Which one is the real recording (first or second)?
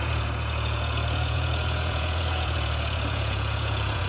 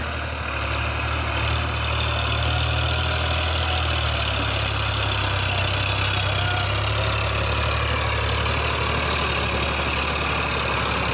second